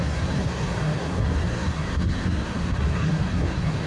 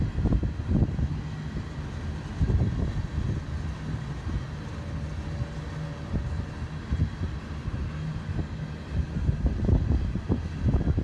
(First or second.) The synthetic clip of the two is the first